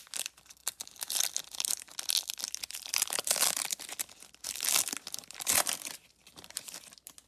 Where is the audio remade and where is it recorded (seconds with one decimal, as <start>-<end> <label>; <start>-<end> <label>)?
0.0-7.3 recorded